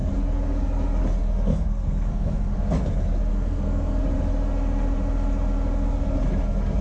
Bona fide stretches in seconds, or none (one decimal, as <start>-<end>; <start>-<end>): 0.0-1.5; 2.6-3.3; 4.0-6.8